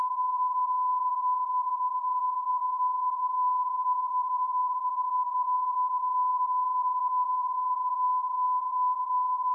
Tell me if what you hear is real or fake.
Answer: fake